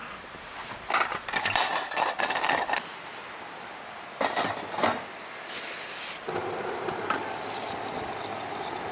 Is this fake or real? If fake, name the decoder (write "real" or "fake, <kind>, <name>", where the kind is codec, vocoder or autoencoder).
real